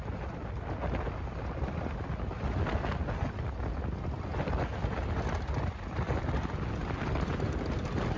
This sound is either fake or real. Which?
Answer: real